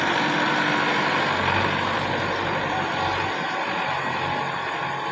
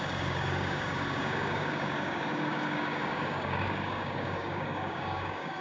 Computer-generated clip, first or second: second